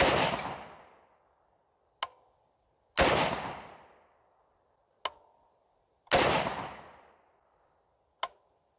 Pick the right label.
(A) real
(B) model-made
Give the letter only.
A